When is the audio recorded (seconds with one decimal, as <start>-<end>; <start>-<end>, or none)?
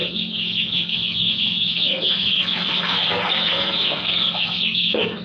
none